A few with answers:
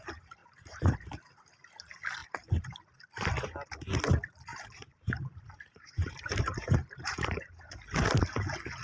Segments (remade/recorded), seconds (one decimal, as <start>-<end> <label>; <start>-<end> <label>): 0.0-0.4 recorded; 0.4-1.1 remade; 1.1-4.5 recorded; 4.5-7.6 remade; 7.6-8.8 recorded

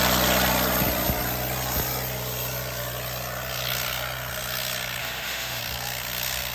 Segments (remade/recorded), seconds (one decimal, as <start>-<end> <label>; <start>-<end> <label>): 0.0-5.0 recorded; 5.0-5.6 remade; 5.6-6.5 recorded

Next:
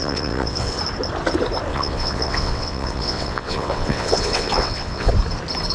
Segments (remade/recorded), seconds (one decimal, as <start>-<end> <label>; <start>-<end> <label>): 0.0-0.8 remade; 0.8-1.7 recorded; 1.7-5.1 remade; 5.1-5.7 recorded

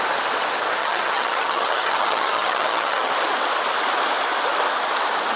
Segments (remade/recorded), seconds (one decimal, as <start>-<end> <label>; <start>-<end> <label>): 0.0-0.8 recorded; 0.8-3.1 remade; 3.1-5.4 recorded